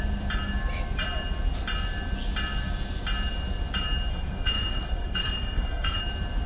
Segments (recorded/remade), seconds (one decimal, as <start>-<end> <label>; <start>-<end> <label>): 0.0-4.1 recorded; 4.1-6.0 remade; 6.0-6.5 recorded